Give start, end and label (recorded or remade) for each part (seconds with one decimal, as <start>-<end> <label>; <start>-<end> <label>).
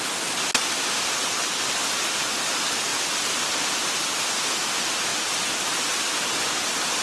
0.0-2.9 recorded; 2.9-4.0 remade; 4.0-5.1 recorded; 5.1-6.5 remade; 6.5-7.0 recorded